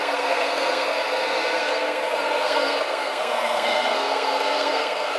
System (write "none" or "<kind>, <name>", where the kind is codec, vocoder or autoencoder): codec, SNAC